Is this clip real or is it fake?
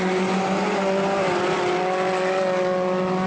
real